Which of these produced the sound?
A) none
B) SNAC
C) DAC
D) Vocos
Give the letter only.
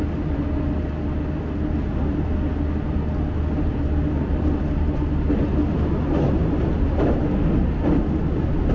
A